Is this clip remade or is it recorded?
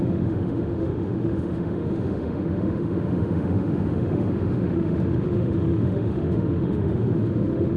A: remade